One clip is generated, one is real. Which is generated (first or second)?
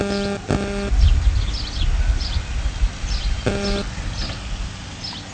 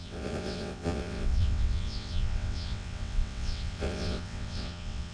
second